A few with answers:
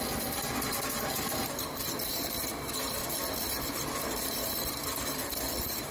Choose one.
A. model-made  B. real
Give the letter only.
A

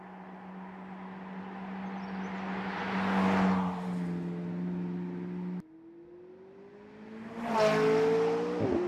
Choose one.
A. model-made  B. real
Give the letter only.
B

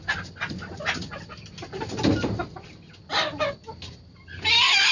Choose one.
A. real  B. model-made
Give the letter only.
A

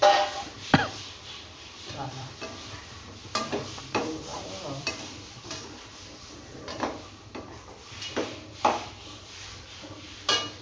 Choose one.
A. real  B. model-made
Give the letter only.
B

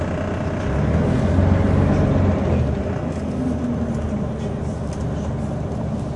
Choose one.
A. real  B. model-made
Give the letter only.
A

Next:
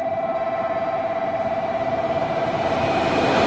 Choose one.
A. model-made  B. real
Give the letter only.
B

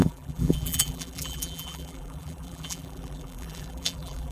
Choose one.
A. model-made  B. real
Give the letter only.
A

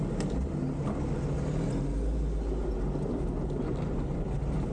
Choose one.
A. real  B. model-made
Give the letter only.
A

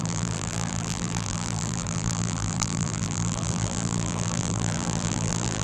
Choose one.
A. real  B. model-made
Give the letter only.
B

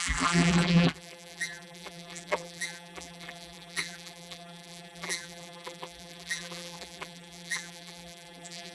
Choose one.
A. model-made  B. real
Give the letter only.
A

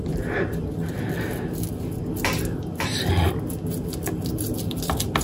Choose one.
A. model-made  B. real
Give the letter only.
B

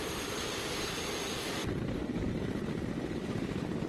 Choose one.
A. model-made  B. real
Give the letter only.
B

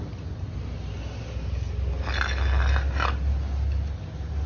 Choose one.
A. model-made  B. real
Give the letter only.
B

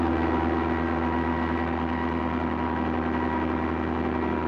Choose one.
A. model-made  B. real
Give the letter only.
B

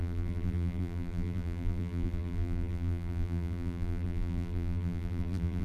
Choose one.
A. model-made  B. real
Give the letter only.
A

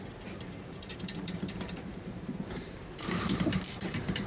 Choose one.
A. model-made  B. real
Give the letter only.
A